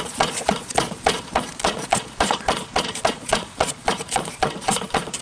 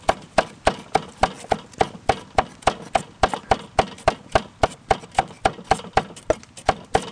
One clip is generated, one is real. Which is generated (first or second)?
first